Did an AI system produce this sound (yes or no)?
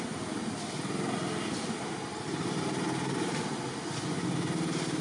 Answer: no